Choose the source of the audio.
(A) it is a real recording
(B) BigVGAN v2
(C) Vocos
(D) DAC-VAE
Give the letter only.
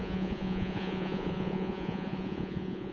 C